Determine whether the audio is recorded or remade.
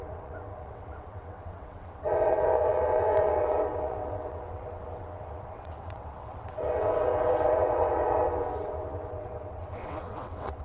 remade